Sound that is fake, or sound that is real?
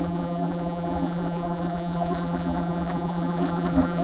fake